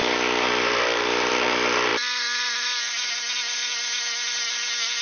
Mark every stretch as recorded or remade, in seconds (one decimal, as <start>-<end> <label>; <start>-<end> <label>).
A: 0.0-1.3 remade; 1.3-1.9 recorded; 1.9-3.1 remade; 3.1-5.0 recorded